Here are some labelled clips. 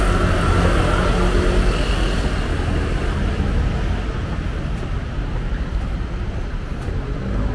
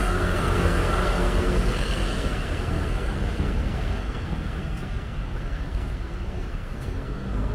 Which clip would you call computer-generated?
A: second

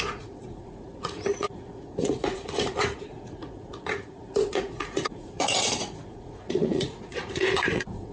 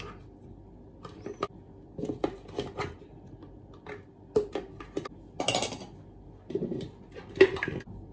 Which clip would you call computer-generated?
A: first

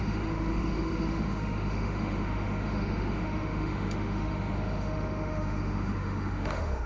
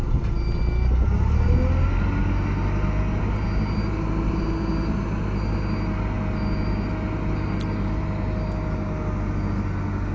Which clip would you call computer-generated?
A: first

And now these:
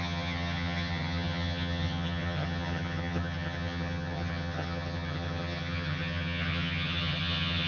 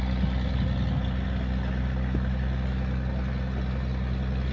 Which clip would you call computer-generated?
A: first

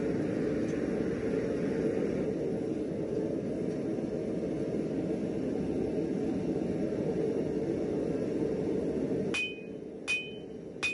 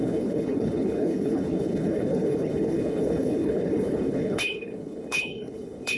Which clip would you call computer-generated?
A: second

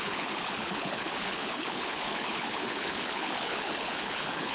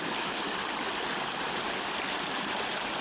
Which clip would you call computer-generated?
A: first